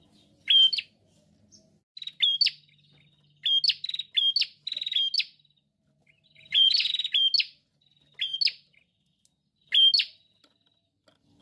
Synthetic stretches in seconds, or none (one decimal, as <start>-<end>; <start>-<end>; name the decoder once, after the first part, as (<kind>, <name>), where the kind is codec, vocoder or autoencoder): 6.0-6.9 (vocoder, Vocos)